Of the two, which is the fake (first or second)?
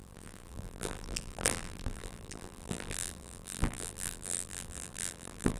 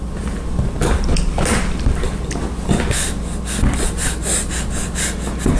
first